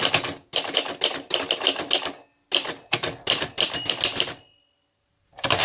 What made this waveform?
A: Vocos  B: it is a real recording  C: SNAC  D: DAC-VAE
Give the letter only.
B